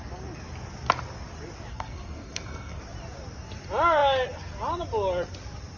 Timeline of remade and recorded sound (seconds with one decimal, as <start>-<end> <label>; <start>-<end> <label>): 0.0-1.7 recorded; 1.7-2.8 remade; 2.8-5.8 recorded